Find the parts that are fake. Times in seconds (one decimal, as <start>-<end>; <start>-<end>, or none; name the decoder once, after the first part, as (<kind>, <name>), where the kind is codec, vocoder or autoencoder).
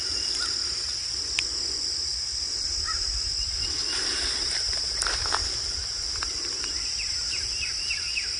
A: none